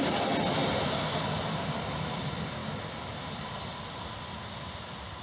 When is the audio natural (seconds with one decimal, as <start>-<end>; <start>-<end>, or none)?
0.0-5.2